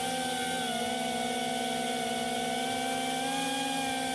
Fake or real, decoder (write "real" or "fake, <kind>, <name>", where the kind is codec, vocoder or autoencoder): real